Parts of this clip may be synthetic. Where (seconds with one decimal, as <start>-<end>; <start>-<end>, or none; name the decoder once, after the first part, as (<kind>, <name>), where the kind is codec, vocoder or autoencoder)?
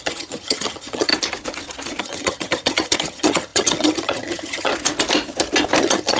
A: 0.0-1.1 (vocoder, HiFi-GAN); 2.0-4.7; 5.8-6.2